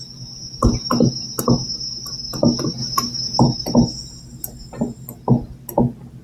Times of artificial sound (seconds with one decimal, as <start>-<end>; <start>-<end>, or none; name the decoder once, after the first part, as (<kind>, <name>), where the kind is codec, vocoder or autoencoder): none